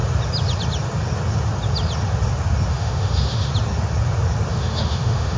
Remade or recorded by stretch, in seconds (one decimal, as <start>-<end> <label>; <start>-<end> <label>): 0.0-2.7 recorded; 2.7-3.5 remade; 3.5-4.5 recorded; 4.5-5.4 remade